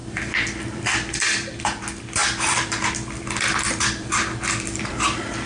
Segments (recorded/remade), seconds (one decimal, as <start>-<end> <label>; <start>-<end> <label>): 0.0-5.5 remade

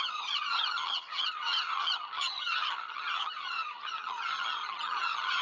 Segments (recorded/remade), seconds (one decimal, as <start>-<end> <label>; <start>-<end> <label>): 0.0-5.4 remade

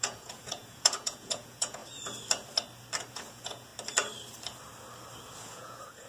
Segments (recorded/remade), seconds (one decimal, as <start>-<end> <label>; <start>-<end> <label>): 0.0-1.8 remade; 1.8-3.1 recorded; 3.1-3.7 remade; 3.7-5.4 recorded; 5.4-6.1 remade